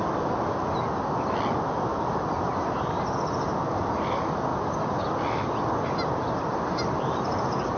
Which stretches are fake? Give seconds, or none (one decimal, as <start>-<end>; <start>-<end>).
none